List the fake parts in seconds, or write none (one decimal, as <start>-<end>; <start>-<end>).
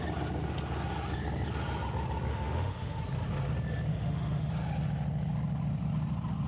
2.3-3.0; 3.9-4.5